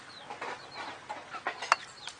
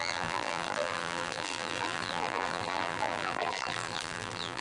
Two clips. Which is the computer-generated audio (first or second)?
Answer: second